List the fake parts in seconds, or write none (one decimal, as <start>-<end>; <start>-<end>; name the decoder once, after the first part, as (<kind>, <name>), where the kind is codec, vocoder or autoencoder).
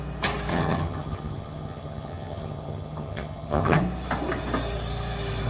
0.5-3.8 (vocoder, HiFi-GAN)